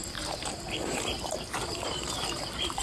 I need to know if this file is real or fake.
fake